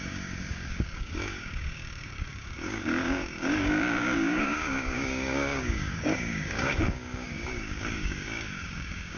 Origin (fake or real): fake